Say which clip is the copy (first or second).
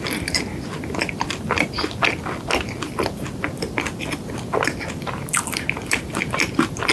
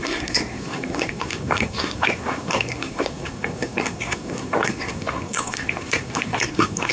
second